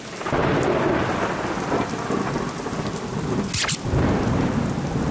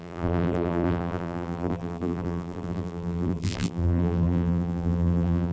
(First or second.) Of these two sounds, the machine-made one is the second